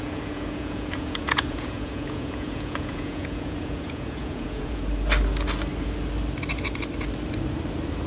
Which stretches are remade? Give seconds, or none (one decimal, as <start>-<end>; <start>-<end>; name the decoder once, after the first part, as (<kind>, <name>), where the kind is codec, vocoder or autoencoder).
0.0-4.8 (vocoder, Vocos)